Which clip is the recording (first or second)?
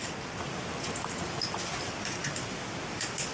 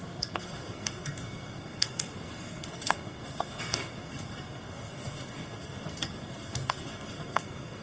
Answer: first